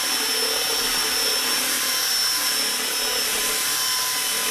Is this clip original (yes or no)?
yes